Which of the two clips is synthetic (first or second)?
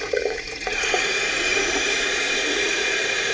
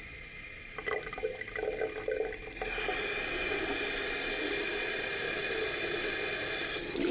first